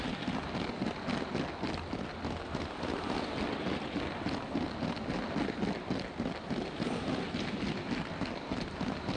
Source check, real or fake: real